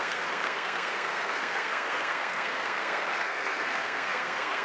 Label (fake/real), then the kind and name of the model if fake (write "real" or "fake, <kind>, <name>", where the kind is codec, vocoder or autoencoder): fake, codec, SNAC